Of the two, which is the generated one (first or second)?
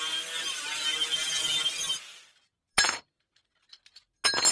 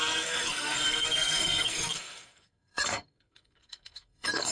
second